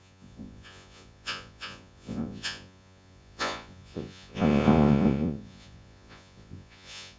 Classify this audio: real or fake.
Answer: fake